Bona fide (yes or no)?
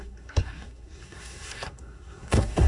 no